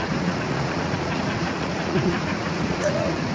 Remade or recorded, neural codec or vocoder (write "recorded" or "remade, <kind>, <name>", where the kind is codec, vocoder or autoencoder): remade, vocoder, Vocos